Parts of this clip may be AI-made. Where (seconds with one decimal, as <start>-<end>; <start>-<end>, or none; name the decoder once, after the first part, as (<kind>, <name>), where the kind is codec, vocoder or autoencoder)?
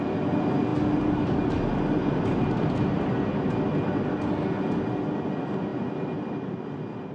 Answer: 0.7-4.0 (vocoder, BigVGAN v2)